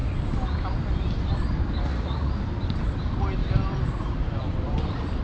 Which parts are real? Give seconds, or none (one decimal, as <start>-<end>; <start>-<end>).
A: 0.0-1.9; 2.4-5.2